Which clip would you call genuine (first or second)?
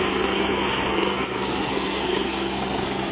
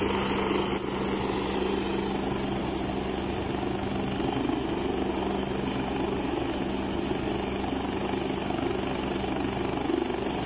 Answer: second